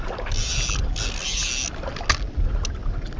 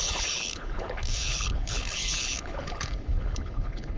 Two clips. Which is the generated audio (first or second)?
second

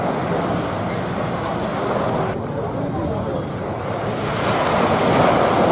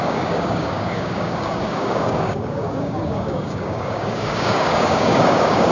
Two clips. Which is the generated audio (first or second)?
second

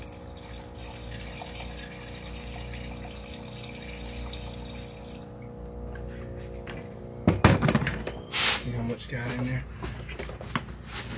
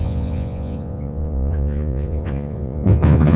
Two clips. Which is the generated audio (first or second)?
second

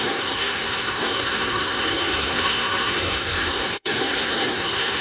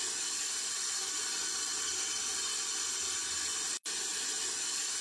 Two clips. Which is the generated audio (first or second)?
first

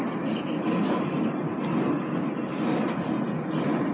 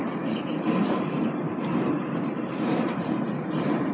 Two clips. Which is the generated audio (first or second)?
second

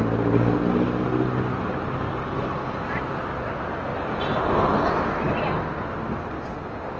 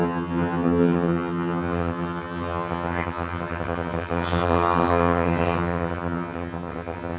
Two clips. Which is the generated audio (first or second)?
second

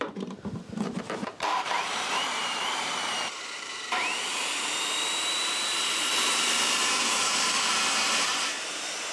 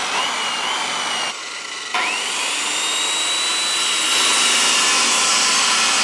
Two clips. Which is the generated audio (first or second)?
first